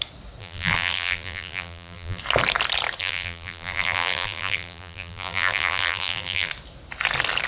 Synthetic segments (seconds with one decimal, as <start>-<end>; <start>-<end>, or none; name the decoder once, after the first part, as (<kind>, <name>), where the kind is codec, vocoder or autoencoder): 0.4-2.2 (vocoder, BigVGAN v2); 3.0-6.5